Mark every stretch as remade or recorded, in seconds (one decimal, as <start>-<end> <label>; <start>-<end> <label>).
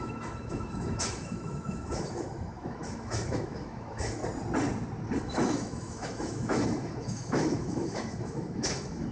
0.0-4.2 remade; 4.2-5.2 recorded; 5.2-9.1 remade